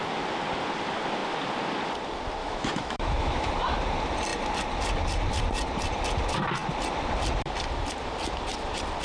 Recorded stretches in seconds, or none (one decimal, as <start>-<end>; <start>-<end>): 0.0-2.4; 3.5-9.0